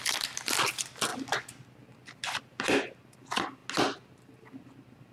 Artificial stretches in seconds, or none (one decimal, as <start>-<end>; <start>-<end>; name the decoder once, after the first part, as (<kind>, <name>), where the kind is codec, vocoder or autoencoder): none